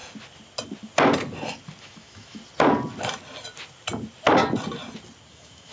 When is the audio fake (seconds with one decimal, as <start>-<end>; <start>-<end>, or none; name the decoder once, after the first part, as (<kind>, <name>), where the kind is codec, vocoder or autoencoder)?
1.8-2.4 (autoencoder, DAC-VAE); 5.3-5.7